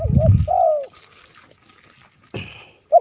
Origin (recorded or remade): recorded